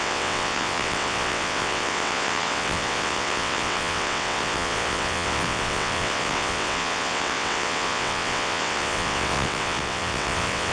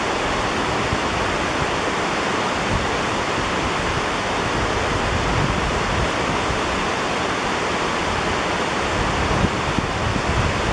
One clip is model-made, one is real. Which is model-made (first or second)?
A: first